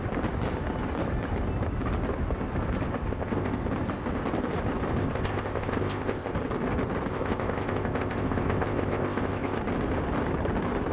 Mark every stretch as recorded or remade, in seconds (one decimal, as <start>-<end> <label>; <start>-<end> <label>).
0.0-3.1 recorded; 3.1-3.6 remade; 3.6-5.0 recorded; 5.0-6.3 remade; 6.3-7.1 recorded; 7.1-9.6 remade; 9.6-10.9 recorded